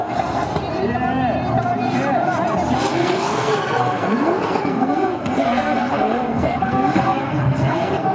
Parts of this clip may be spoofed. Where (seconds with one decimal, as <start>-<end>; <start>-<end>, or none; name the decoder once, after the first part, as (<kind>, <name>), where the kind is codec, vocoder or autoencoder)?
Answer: 0.0-0.5 (codec, SNAC); 2.9-8.1